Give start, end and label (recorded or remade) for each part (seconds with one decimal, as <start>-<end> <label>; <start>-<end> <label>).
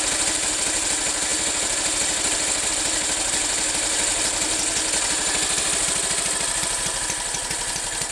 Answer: 0.0-8.1 recorded